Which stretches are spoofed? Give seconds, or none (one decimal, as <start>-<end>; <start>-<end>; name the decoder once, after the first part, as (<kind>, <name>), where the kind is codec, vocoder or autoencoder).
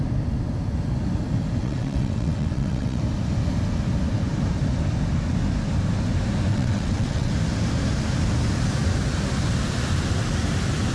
1.6-3.0 (vocoder, WaveNeXt); 6.5-7.3